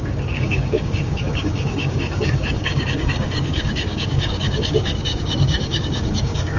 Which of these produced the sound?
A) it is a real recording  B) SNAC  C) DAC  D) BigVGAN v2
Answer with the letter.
C